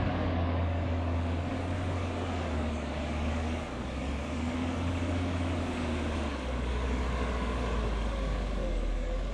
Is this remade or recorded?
remade